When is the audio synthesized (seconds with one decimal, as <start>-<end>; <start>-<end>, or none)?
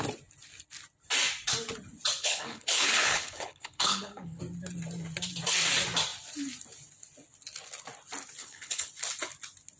2.2-4.4; 8.4-8.9